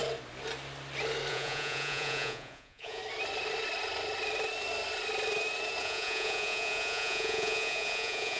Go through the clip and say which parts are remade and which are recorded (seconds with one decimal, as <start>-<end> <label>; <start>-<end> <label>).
0.0-1.3 recorded; 1.3-3.0 remade; 3.0-5.8 recorded; 5.8-8.4 remade